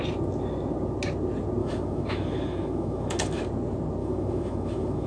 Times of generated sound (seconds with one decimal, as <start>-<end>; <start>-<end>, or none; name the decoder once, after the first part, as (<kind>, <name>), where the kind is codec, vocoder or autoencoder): 1.6-3.4 (autoencoder, DAC-VAE); 4.0-5.1